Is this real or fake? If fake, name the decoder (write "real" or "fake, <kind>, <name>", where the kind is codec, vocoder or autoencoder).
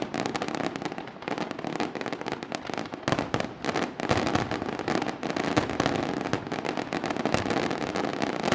real